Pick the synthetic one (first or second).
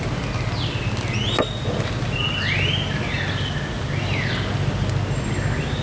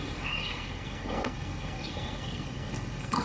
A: second